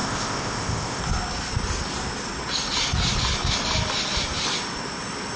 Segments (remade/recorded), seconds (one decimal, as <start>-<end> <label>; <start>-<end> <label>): 0.0-1.0 remade; 1.0-5.4 recorded